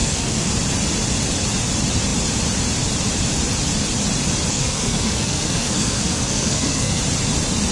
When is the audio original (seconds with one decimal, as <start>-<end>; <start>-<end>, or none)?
0.5-4.5; 7.0-7.7